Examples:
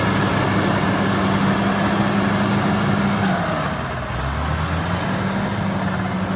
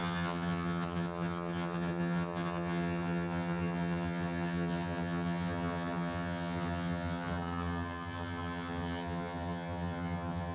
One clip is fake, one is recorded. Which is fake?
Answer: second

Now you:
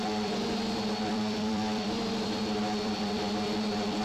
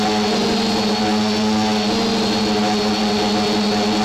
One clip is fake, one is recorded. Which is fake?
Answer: first